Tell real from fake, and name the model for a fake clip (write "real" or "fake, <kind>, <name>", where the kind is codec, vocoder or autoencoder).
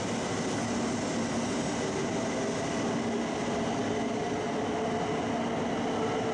real